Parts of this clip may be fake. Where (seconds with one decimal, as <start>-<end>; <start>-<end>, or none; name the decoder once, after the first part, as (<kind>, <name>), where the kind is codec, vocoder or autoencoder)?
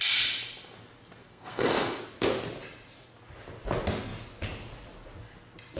1.2-2.0 (codec, SNAC)